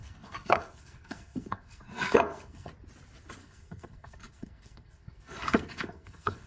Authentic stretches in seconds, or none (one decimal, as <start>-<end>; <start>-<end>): 2.7-3.4